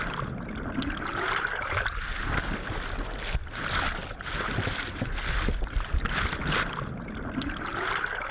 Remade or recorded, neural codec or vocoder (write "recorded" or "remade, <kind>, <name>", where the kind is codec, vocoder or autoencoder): recorded